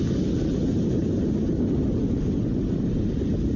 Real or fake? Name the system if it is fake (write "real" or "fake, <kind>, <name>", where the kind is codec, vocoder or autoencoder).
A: real